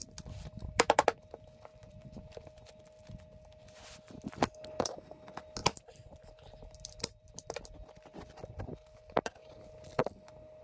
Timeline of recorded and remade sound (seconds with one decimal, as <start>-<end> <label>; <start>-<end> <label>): 0.0-1.2 remade; 1.2-1.7 recorded; 1.7-2.3 remade; 2.3-5.6 recorded; 5.6-9.5 remade; 9.5-10.6 recorded